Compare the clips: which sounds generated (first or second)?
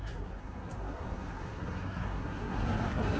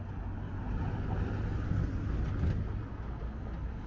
first